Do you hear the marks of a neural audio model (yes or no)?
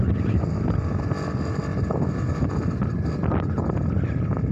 no